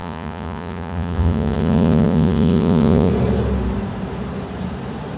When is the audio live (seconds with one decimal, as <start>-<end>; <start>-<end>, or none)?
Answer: 3.1-5.2